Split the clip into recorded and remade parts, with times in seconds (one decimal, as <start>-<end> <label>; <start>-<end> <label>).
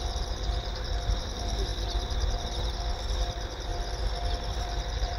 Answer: 0.0-3.7 remade; 3.7-4.6 recorded; 4.6-5.2 remade